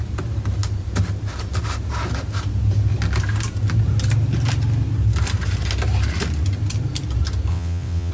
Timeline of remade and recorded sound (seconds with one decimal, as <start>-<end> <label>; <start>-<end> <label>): 0.0-7.5 recorded; 7.5-8.1 remade